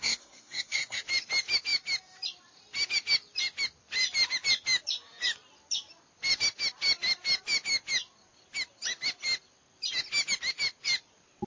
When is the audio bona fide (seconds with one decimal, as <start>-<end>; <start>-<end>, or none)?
1.0-11.5